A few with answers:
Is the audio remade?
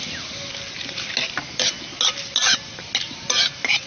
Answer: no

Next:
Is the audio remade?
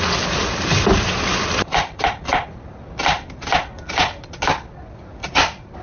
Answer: no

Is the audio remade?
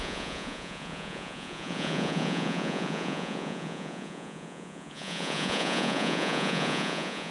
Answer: yes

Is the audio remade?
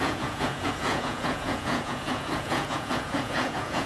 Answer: yes